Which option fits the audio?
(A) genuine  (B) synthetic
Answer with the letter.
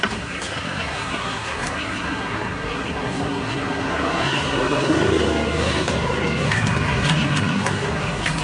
B